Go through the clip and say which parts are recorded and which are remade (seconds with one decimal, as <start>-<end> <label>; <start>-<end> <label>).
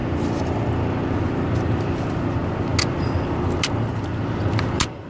0.0-5.1 recorded